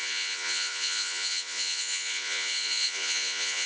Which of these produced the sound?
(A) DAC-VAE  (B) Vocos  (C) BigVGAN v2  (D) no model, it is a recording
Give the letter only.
B